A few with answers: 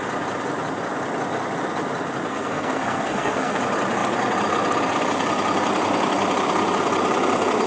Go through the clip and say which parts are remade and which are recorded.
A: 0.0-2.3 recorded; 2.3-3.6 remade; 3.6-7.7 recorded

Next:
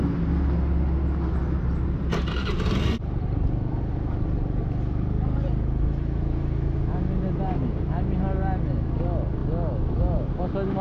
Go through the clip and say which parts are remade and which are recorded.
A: 0.0-10.8 recorded

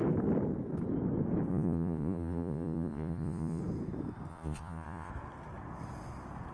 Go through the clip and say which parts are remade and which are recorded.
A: 0.0-1.5 recorded; 1.5-3.6 remade; 3.6-4.3 recorded; 4.3-5.1 remade; 5.1-6.5 recorded

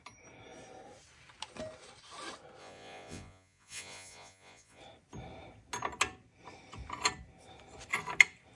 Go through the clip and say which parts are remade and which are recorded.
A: 0.0-2.6 recorded; 2.6-4.8 remade; 4.8-8.6 recorded

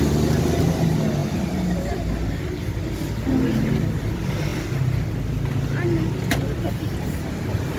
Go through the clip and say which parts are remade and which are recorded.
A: 0.0-7.8 recorded

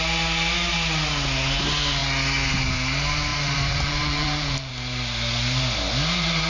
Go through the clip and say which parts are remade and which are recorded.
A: 0.0-3.3 recorded; 3.3-4.7 remade; 4.7-6.5 recorded